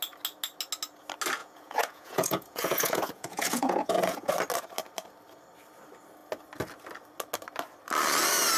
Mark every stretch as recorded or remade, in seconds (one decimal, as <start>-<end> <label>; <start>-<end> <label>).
0.0-1.4 recorded; 1.4-4.3 remade; 4.3-8.6 recorded